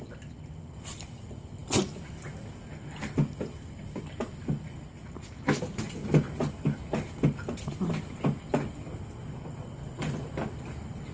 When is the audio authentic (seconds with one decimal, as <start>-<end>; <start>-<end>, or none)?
0.0-11.1